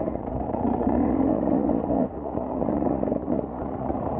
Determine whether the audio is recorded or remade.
remade